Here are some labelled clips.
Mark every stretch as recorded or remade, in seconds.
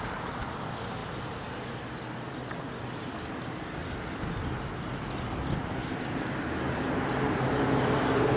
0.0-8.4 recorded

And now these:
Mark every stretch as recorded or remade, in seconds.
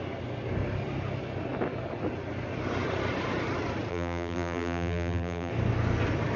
0.0-3.9 recorded; 3.9-5.5 remade; 5.5-6.4 recorded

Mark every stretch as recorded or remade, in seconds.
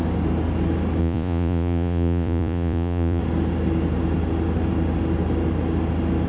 0.0-1.0 recorded; 1.0-3.2 remade; 3.2-6.3 recorded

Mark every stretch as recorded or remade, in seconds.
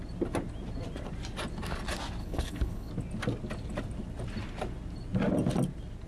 0.0-2.2 recorded; 2.2-2.9 remade; 2.9-6.1 recorded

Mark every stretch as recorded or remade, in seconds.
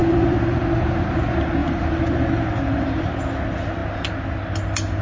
0.0-0.6 remade; 0.6-1.6 recorded; 1.6-3.1 remade; 3.1-5.0 recorded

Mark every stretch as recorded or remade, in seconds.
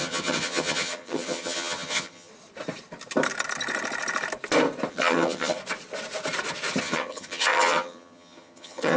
0.0-2.3 remade; 2.3-4.9 recorded; 4.9-5.6 remade; 5.6-6.8 recorded; 6.8-9.0 remade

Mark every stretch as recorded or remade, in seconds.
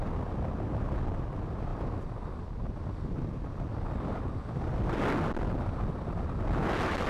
0.0-7.1 recorded